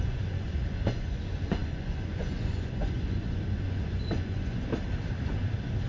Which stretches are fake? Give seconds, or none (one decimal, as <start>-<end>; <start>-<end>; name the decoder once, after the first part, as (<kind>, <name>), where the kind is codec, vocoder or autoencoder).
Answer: 0.0-4.7 (vocoder, Vocos)